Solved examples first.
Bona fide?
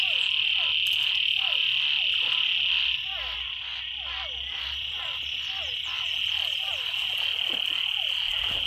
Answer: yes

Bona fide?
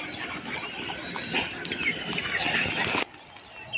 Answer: yes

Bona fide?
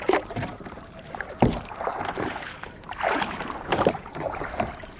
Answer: no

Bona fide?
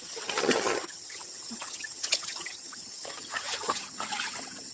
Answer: no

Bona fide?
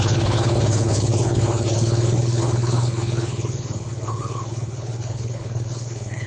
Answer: no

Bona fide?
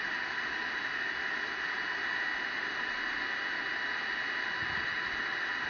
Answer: yes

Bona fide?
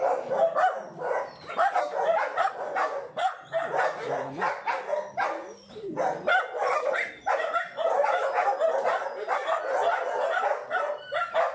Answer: yes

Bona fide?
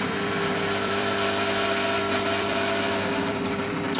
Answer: no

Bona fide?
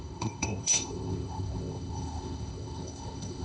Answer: no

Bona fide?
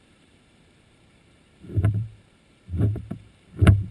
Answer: no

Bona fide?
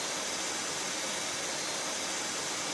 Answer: yes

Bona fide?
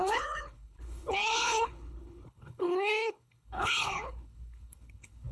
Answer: no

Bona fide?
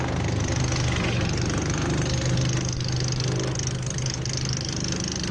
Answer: yes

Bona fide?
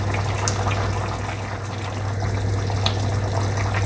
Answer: yes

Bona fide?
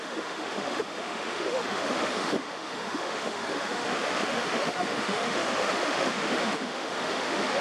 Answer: no